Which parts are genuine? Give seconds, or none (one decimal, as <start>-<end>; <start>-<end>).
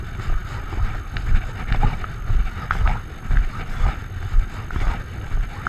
0.0-5.7